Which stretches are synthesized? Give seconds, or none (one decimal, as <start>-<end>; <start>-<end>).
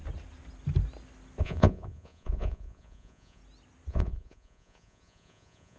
1.4-3.4; 3.9-5.8